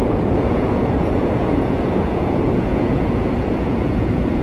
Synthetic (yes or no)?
yes